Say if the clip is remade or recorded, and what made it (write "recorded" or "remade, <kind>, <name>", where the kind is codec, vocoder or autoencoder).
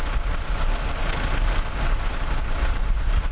recorded